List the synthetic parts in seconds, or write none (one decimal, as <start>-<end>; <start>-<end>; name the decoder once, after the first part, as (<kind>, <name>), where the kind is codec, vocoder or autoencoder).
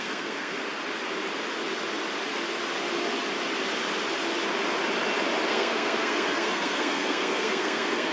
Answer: 0.0-0.6 (codec, SNAC); 5.5-8.1